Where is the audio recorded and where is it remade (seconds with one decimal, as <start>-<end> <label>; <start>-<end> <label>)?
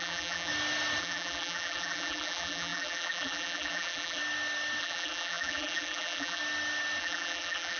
0.0-0.5 remade; 0.5-1.0 recorded; 1.0-4.2 remade; 4.2-4.8 recorded; 4.8-6.4 remade; 6.4-7.0 recorded; 7.0-7.8 remade